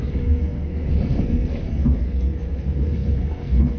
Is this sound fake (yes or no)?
yes